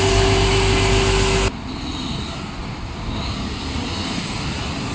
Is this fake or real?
real